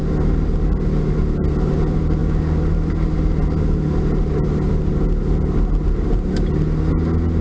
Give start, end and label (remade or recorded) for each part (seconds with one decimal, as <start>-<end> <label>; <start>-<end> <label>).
0.0-7.4 recorded